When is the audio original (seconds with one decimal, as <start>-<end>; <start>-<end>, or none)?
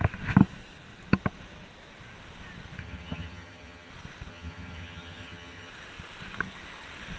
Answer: 0.0-2.8; 3.9-4.3; 5.7-7.2